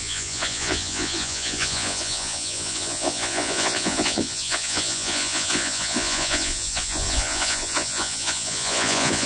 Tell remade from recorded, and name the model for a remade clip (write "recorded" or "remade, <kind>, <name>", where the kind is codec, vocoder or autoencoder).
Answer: remade, vocoder, Vocos